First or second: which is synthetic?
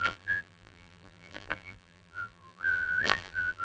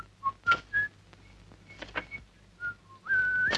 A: first